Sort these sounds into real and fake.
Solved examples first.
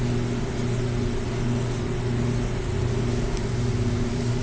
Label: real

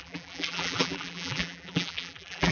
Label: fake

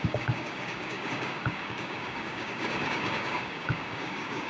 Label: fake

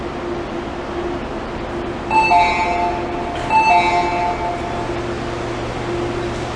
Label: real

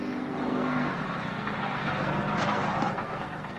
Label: fake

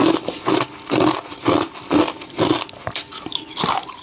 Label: real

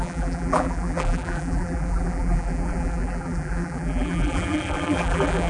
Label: fake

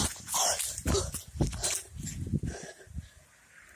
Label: real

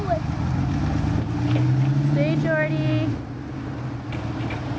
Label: real